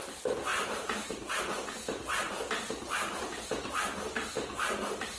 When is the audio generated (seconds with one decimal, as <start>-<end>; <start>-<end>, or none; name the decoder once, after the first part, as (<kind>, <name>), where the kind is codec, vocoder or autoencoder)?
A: 0.5-1.3 (vocoder, BigVGAN v2)